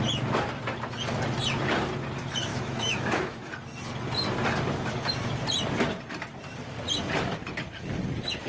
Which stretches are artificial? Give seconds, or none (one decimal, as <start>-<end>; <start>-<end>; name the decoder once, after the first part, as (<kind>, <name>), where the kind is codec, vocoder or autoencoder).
2.5-3.5 (autoencoder, DAC-VAE)